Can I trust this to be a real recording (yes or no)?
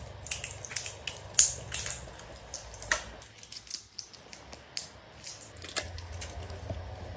yes